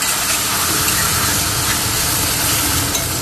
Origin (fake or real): real